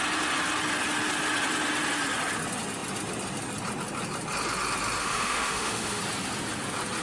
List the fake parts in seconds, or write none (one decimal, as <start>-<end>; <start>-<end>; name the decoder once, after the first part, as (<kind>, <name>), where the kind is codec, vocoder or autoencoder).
5.0-6.0 (autoencoder, DAC-VAE)